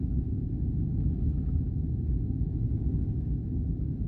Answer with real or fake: fake